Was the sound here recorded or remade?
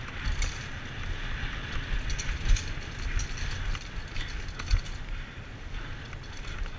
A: recorded